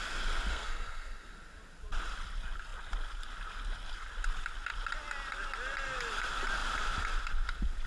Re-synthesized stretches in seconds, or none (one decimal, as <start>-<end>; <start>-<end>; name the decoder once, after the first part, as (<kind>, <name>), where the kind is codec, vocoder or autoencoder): 0.5-1.3 (codec, SNAC)